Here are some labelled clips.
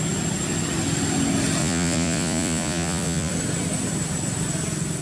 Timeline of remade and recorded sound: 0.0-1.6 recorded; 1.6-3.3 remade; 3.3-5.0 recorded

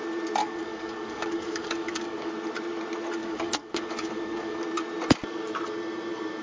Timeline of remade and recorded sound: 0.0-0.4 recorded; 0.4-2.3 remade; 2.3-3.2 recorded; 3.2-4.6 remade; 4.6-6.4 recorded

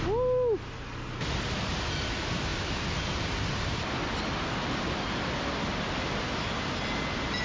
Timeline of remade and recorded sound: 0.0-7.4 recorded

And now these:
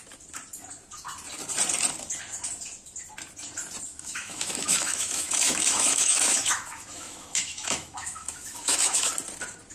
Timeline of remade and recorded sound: 0.0-3.9 recorded; 3.9-9.1 remade; 9.1-9.7 recorded